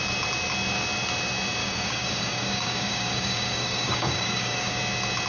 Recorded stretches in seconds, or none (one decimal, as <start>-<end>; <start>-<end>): 0.0-1.6; 4.8-5.3